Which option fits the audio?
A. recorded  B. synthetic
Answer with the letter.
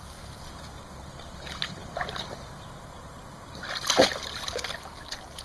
A